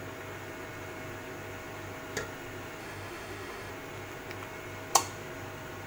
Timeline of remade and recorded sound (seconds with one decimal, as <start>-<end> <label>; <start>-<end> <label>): 0.0-2.8 recorded; 2.8-3.7 remade; 3.7-5.9 recorded